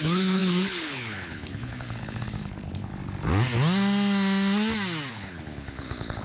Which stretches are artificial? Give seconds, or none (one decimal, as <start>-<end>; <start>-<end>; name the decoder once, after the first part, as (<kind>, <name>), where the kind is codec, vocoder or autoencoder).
0.0-2.9 (codec, HILCodec); 5.1-6.2